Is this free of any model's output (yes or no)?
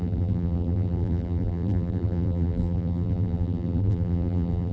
no